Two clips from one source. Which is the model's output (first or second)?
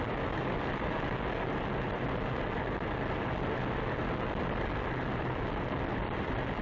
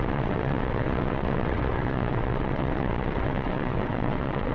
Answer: second